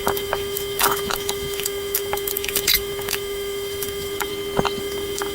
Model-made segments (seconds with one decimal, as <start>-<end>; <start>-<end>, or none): 0.0-4.3; 4.8-5.3

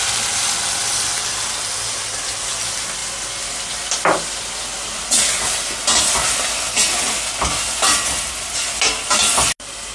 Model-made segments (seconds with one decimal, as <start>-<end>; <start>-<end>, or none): none